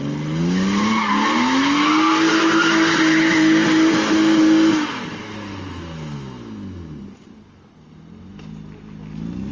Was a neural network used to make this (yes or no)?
no